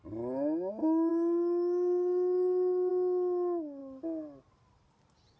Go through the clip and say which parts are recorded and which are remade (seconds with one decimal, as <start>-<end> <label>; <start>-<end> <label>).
0.0-1.1 recorded; 1.1-2.9 remade; 2.9-5.4 recorded